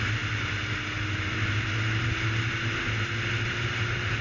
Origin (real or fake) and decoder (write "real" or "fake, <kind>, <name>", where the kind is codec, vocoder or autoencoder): real